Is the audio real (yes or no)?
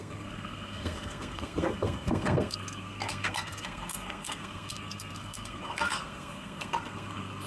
no